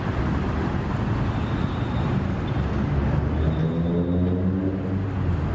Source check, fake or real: real